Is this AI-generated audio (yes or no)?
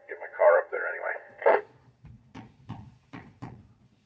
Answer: yes